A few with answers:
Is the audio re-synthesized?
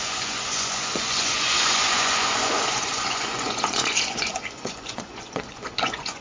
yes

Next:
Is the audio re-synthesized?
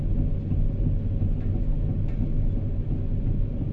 no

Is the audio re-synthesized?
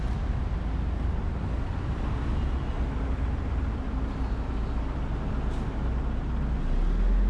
no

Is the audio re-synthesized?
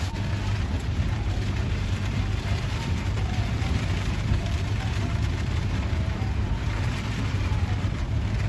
yes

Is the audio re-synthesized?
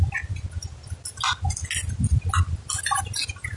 no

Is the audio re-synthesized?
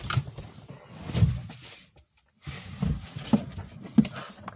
no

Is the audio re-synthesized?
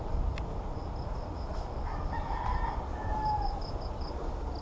no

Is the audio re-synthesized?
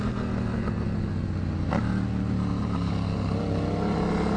no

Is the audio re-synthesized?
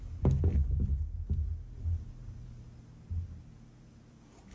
no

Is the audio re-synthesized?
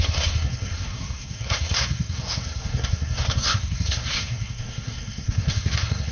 yes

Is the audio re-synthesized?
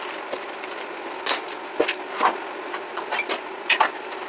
no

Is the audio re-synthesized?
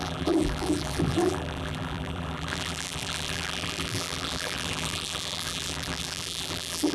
yes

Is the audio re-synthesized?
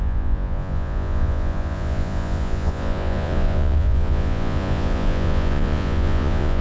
yes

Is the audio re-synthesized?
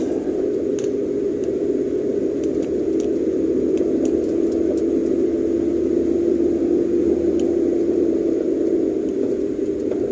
no